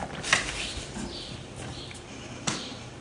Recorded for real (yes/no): no